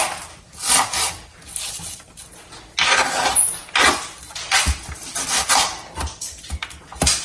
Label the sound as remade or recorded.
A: recorded